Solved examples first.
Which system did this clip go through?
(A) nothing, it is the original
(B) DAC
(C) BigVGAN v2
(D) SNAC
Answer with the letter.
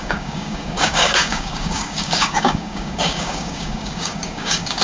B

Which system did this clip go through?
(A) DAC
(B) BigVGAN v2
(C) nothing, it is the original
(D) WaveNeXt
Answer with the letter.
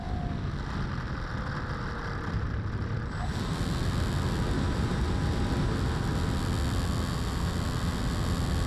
C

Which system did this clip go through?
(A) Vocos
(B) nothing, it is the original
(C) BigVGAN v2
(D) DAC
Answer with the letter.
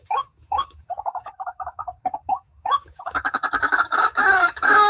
D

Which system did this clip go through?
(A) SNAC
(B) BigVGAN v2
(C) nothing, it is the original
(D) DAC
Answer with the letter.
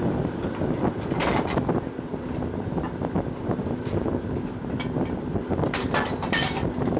C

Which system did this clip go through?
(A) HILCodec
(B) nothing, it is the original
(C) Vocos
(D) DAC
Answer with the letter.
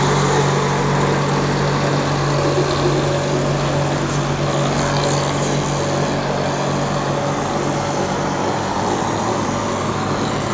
B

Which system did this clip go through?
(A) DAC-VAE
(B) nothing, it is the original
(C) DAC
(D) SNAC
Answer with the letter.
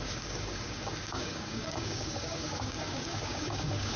C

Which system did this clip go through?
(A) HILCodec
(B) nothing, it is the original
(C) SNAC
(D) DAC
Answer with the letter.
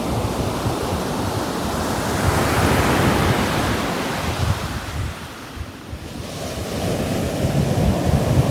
B